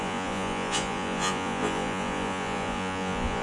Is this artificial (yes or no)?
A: yes